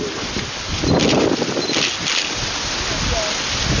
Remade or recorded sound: recorded